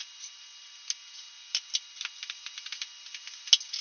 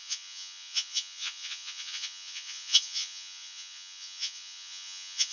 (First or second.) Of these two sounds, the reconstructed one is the second